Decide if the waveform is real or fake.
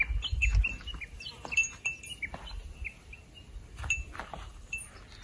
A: real